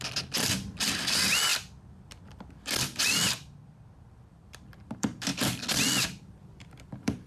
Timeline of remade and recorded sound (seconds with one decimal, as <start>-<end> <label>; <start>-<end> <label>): 0.0-7.3 remade

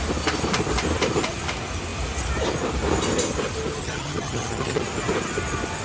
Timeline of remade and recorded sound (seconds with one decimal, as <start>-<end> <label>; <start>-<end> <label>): 0.0-3.8 recorded; 3.8-4.8 remade; 4.8-5.8 recorded

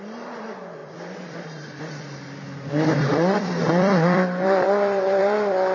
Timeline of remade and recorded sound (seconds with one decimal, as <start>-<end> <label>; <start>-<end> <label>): 0.0-5.7 remade

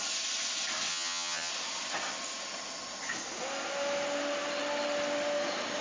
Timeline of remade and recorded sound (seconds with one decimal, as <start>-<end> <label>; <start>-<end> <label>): 0.0-0.9 recorded; 0.9-1.5 remade; 1.5-5.8 recorded

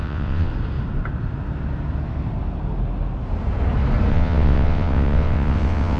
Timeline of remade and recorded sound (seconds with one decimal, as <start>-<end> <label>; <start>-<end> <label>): 0.0-0.5 remade; 0.5-4.1 recorded; 4.1-6.0 remade

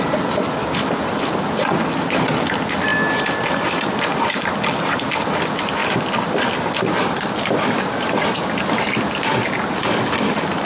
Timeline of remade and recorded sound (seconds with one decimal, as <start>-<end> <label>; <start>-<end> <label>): 0.0-10.7 recorded

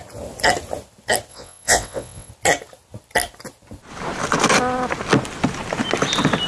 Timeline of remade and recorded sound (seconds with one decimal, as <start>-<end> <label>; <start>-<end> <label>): 0.0-1.3 recorded; 1.3-2.3 remade; 2.3-6.5 recorded